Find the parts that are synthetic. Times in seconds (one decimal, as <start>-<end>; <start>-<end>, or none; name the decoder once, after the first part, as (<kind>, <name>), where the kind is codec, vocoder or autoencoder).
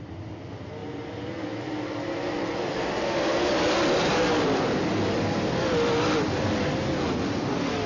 none